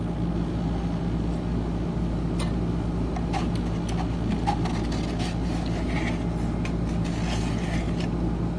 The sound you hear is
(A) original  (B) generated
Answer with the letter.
A